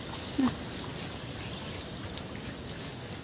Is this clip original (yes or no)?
yes